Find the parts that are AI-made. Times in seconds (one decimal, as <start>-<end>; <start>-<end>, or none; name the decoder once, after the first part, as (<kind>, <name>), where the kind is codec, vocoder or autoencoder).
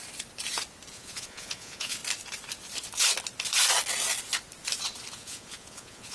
0.9-2.0 (vocoder, Vocos); 5.1-6.1